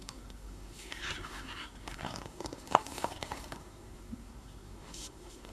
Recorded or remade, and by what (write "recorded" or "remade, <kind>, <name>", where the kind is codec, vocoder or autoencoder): remade, codec, SNAC